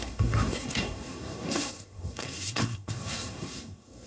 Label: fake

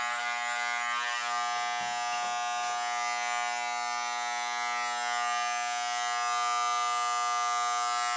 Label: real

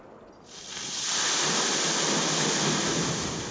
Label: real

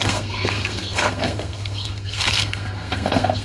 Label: fake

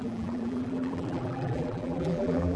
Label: fake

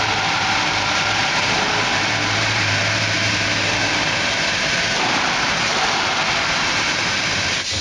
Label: fake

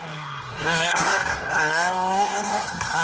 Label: fake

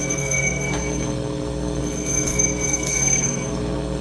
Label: fake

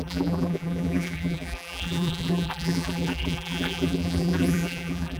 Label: fake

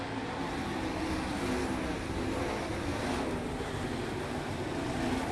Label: real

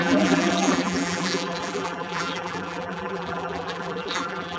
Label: fake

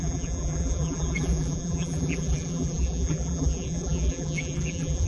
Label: fake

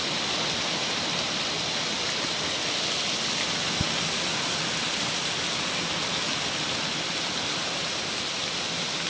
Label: real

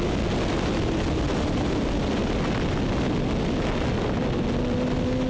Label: real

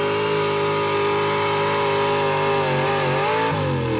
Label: real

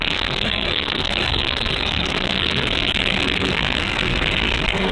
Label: fake